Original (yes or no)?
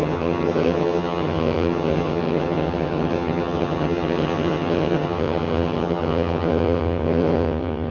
no